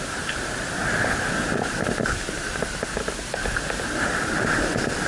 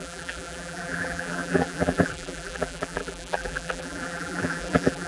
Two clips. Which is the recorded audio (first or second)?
first